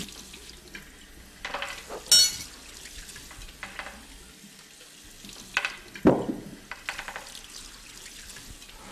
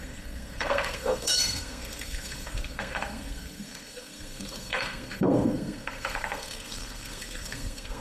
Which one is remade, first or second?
second